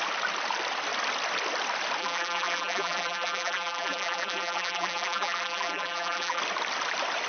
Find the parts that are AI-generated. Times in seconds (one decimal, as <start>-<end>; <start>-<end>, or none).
2.0-6.4